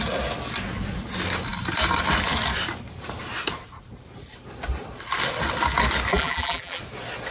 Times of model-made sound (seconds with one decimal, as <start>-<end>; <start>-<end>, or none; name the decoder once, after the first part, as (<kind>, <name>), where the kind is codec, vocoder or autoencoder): 6.1-6.8 (vocoder, BigVGAN v2)